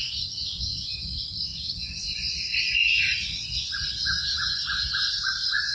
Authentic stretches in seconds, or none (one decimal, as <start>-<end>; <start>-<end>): none